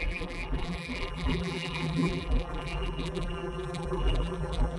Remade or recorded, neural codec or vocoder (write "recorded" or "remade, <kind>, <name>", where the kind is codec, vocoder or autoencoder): remade, vocoder, BigVGAN v2